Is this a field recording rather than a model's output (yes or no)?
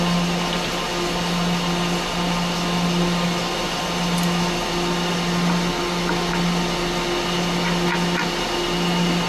yes